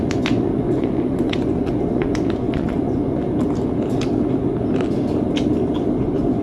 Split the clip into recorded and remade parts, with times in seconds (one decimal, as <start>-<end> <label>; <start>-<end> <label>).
0.0-3.2 remade; 3.2-6.0 recorded; 6.0-6.4 remade